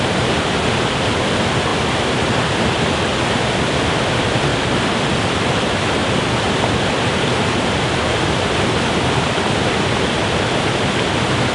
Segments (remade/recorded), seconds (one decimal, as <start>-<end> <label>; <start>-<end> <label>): 0.0-1.7 recorded; 1.7-2.8 remade; 2.8-4.5 recorded; 4.5-6.4 remade; 6.4-8.1 recorded; 8.1-9.8 remade; 9.8-11.5 recorded